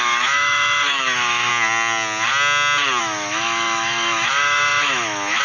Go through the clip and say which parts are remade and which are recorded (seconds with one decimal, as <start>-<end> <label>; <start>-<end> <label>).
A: 0.0-1.5 remade; 1.5-3.0 recorded; 3.0-5.4 remade